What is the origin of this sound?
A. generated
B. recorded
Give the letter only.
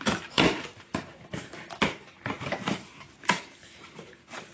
A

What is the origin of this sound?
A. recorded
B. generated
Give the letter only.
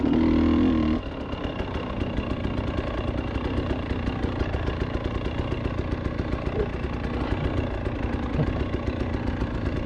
A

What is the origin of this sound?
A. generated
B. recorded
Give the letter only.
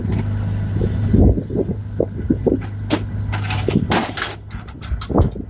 B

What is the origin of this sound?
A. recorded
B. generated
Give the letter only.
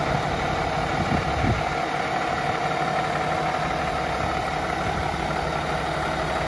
A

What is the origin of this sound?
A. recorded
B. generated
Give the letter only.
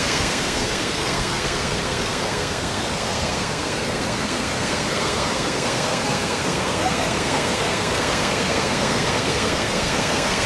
B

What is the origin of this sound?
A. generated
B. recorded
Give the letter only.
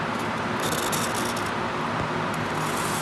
B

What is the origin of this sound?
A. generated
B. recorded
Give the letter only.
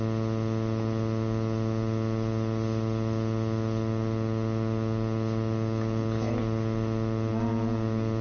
B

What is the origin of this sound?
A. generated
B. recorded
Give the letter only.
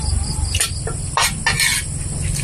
B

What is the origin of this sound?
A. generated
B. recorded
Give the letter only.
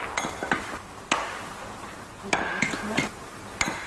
B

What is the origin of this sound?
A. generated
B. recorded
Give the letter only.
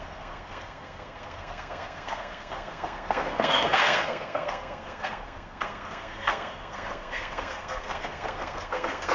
A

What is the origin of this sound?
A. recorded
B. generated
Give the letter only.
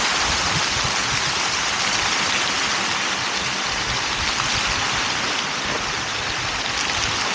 A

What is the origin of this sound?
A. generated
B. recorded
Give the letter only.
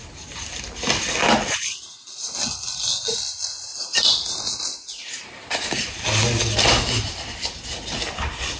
B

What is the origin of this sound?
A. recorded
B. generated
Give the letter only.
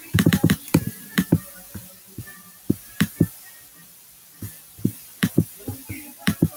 B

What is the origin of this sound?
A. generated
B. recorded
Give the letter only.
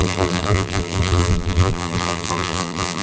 A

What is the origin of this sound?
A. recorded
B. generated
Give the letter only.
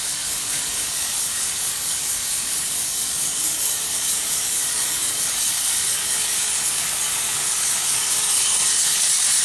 B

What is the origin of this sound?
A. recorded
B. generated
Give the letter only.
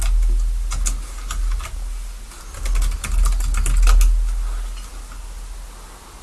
A